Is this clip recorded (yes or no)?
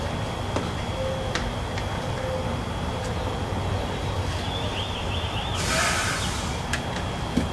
yes